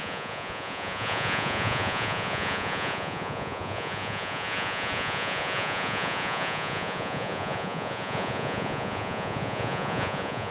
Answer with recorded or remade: remade